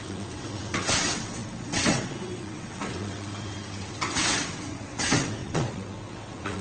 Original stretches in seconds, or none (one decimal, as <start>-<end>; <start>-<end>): none